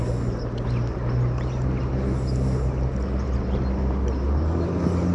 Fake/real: real